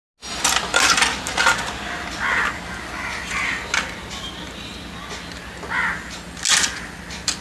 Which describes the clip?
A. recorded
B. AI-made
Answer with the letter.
A